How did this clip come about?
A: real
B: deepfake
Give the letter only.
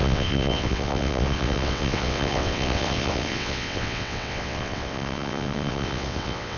B